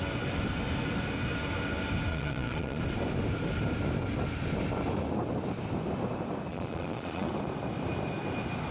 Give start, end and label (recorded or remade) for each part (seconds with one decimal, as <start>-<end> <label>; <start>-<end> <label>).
0.0-2.1 recorded; 2.1-2.8 remade; 2.8-6.5 recorded; 6.5-7.3 remade; 7.3-8.7 recorded